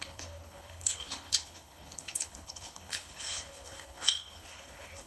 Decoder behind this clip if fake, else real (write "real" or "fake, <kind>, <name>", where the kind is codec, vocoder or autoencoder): fake, codec, HILCodec